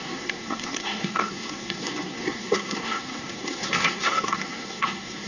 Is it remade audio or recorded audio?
remade